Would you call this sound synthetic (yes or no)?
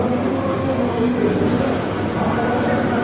no